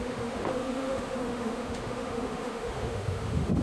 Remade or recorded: remade